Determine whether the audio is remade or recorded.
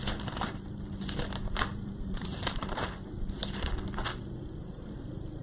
remade